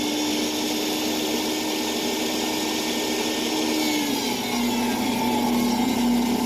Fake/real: real